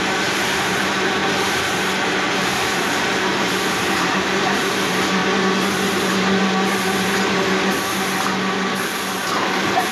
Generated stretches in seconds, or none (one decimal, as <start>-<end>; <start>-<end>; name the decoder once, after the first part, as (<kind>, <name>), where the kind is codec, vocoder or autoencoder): 0.0-1.2 (vocoder, BigVGAN v2); 2.3-5.2; 9.3-9.9

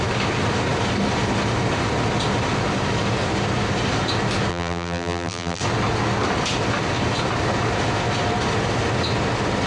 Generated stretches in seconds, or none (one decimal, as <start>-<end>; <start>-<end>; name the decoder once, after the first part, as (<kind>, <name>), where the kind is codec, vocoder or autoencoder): 4.5-5.6 (vocoder, BigVGAN v2)

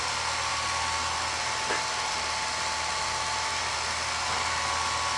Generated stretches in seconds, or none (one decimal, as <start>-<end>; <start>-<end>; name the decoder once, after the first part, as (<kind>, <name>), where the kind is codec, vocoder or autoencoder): none

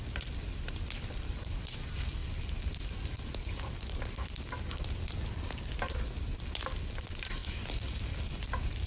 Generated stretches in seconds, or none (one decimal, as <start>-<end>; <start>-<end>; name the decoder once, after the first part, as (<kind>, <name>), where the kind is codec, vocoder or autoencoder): none

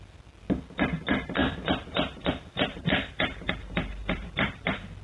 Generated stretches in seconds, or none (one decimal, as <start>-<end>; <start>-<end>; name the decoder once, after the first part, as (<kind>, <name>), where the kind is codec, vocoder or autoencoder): 1.4-3.2 (vocoder, BigVGAN v2); 4.0-4.5

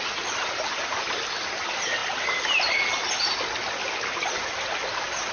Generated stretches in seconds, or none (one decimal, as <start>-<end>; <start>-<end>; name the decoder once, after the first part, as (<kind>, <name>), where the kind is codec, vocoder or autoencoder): none

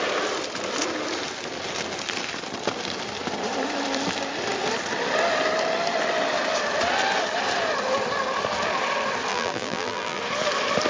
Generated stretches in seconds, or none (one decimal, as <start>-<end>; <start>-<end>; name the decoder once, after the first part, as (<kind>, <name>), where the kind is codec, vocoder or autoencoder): 9.3-10.2 (vocoder, BigVGAN v2)

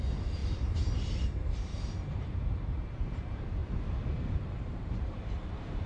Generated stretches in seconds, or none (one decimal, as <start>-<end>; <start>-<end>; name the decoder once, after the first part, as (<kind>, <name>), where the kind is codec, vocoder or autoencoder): 0.0-3.6 (vocoder, BigVGAN v2); 4.3-5.9